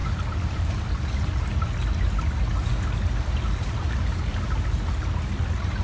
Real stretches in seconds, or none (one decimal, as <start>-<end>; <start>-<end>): 0.0-5.8